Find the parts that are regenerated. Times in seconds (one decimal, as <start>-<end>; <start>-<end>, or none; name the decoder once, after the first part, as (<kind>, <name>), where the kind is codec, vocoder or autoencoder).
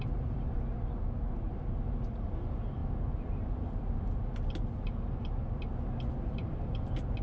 0.0-2.8 (vocoder, BigVGAN v2)